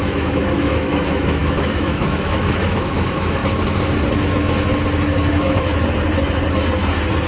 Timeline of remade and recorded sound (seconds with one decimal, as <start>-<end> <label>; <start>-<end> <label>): 0.0-3.4 remade; 3.4-5.3 recorded; 5.3-5.7 remade; 5.7-7.3 recorded